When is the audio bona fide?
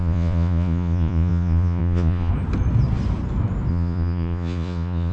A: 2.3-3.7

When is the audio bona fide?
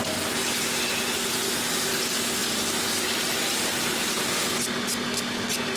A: 0.0-5.8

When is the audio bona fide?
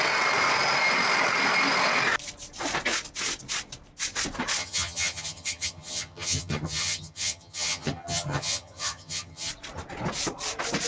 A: 0.0-4.6; 9.5-10.9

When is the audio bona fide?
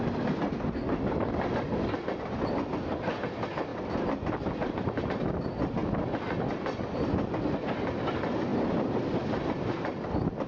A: 0.0-3.7; 5.1-10.5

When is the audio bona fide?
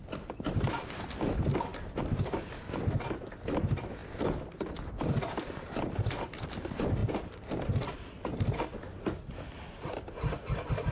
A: 0.0-7.0; 7.9-10.9